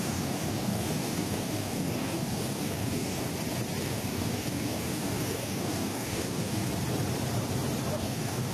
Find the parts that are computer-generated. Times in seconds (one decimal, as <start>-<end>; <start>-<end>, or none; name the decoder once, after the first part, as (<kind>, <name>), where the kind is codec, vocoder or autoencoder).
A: 0.0-3.3 (codec, DAC); 3.8-6.7; 8.0-8.5